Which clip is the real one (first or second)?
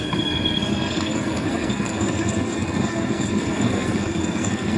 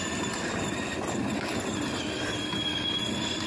second